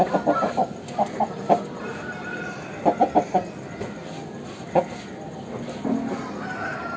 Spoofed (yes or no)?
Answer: no